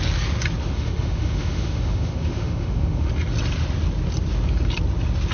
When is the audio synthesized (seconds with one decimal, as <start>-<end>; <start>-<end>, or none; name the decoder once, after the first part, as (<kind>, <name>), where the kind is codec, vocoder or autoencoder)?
0.6-3.1 (autoencoder, DAC-VAE)